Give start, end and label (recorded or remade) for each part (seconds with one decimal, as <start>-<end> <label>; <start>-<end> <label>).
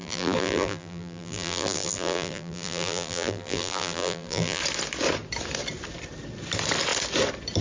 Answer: 0.0-4.6 remade; 4.6-7.6 recorded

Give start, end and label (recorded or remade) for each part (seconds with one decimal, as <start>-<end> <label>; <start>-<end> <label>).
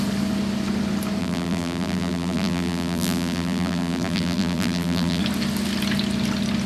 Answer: 0.0-1.2 recorded; 1.2-5.2 remade; 5.2-6.7 recorded